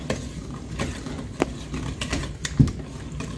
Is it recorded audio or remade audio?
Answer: recorded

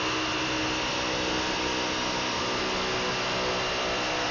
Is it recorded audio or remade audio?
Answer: recorded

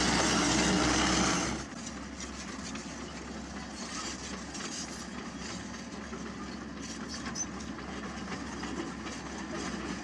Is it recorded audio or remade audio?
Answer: recorded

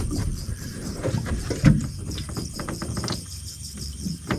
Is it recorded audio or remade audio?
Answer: remade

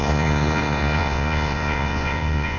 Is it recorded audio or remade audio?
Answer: remade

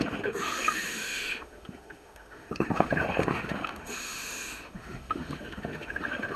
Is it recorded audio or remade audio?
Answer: remade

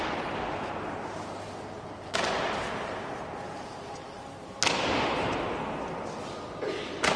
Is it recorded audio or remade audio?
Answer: recorded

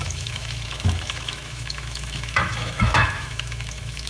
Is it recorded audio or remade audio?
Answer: remade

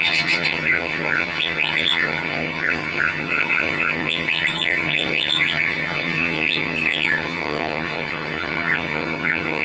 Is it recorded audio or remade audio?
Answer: remade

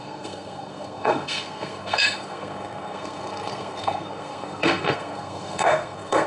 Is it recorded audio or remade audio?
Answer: remade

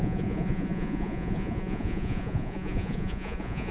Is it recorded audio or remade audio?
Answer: remade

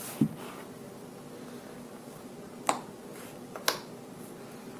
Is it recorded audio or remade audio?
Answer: recorded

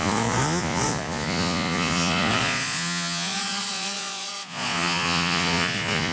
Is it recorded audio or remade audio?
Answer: remade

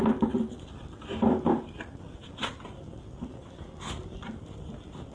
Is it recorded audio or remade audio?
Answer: recorded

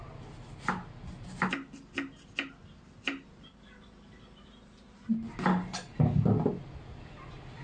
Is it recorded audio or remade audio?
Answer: recorded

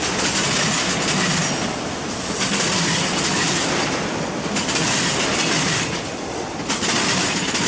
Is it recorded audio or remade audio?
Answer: recorded